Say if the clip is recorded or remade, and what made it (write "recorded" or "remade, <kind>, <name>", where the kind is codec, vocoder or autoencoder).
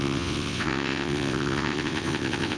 remade, vocoder, WaveNeXt